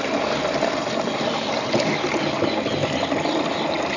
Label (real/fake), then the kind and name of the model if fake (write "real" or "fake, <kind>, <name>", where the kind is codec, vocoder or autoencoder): real